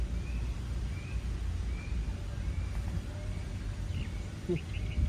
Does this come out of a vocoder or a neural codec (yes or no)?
no